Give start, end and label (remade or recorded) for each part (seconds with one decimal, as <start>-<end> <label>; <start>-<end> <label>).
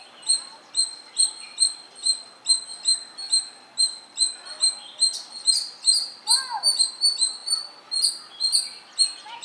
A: 0.0-9.4 recorded